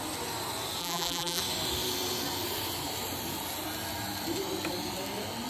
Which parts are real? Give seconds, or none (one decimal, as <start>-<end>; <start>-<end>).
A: 0.0-0.8; 1.4-5.5